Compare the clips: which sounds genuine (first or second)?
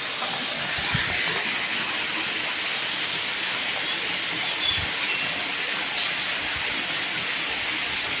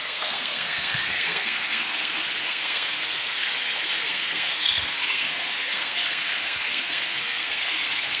first